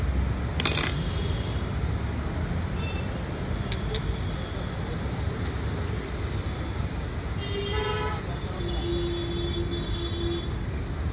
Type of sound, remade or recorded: recorded